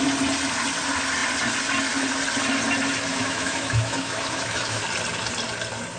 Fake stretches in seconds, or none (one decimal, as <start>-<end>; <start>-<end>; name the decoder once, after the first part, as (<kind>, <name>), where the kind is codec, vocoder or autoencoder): 3.1-4.8 (autoencoder, DAC-VAE)